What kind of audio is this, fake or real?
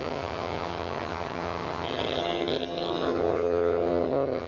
fake